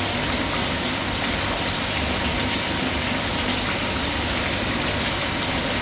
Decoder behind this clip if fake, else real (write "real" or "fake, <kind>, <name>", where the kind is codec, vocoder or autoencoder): real